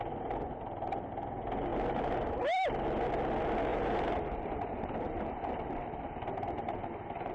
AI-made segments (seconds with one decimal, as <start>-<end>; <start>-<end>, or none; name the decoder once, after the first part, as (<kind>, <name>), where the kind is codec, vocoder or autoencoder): 1.7-2.4 (vocoder, BigVGAN v2); 3.7-7.3